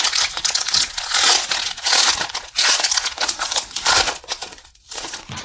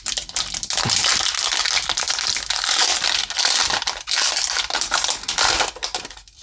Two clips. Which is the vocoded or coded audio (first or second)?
first